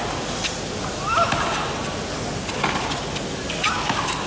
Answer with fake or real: real